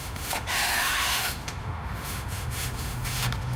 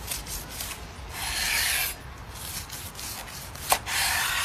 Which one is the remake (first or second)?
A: first